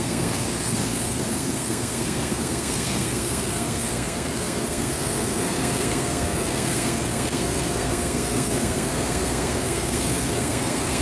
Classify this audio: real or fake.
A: fake